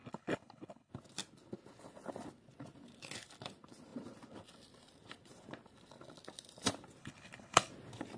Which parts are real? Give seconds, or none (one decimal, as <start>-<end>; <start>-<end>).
0.9-7.0; 7.7-8.2